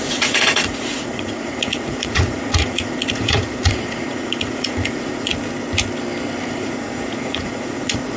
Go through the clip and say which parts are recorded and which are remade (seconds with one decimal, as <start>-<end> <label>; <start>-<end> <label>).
0.0-5.3 remade; 5.3-6.5 recorded; 6.5-8.2 remade